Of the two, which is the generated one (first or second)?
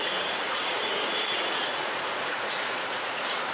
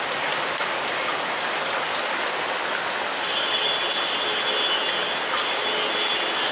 first